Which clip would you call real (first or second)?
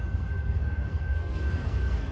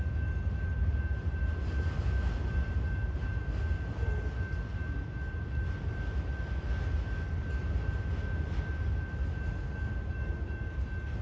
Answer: second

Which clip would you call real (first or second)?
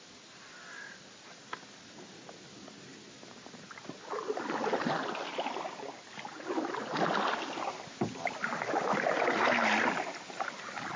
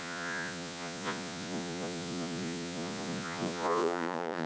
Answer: first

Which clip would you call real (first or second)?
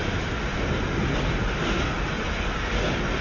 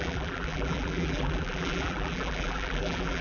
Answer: first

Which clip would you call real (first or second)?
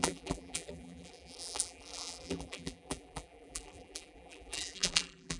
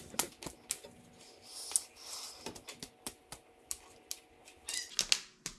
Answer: second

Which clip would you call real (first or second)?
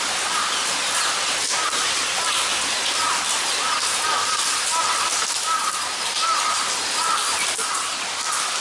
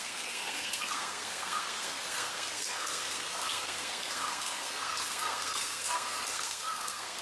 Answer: first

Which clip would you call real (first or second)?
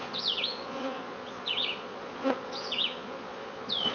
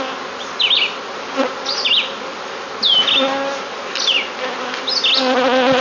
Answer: second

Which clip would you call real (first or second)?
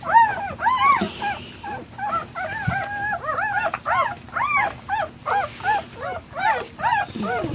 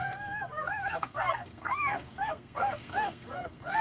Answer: first